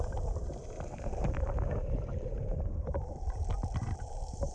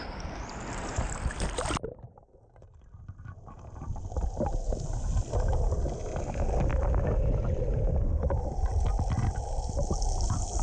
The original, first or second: second